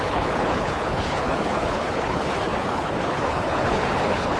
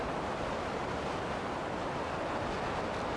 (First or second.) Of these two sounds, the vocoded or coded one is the first